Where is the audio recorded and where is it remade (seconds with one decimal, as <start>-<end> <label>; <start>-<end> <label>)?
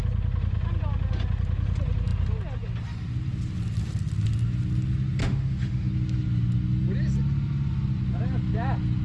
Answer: 0.0-5.2 recorded; 5.2-5.9 remade; 5.9-9.0 recorded